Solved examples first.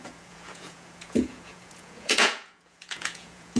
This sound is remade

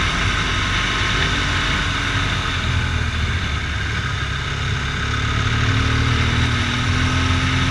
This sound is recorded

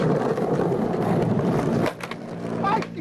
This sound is recorded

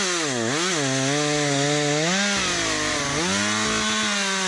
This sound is recorded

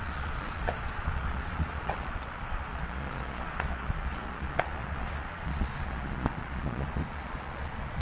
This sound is remade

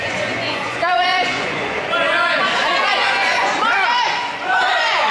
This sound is remade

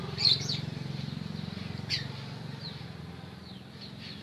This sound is recorded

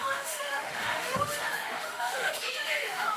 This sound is remade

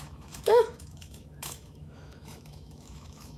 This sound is remade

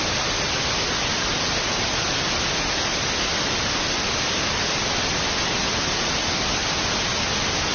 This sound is recorded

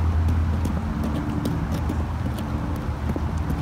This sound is recorded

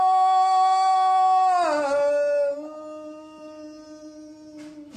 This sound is recorded